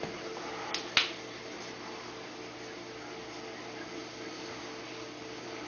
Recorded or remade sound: recorded